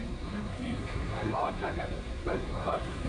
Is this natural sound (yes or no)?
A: no